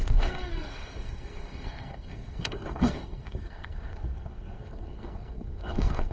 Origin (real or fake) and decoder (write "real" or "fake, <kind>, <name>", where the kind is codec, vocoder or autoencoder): fake, codec, SNAC